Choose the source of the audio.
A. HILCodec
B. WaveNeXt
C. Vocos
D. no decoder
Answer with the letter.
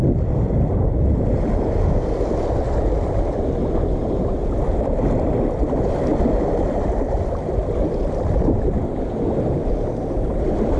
D